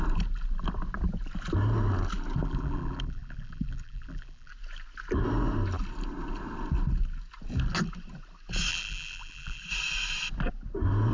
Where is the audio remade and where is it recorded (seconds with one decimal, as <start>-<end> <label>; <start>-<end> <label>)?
0.0-2.4 recorded; 2.4-4.5 remade; 4.5-8.7 recorded; 8.7-9.6 remade; 9.6-11.1 recorded